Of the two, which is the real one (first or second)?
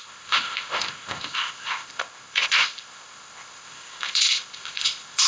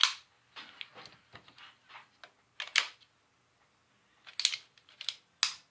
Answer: second